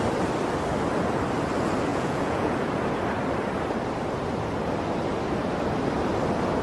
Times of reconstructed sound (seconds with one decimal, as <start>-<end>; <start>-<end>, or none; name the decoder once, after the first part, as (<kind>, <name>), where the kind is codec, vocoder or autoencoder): 1.9-2.7 (vocoder, Vocos)